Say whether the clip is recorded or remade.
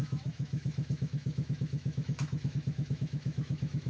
remade